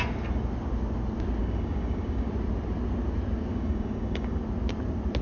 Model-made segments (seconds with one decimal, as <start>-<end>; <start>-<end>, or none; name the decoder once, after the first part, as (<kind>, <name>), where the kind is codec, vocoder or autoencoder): 1.4-2.3 (codec, DAC); 3.5-4.4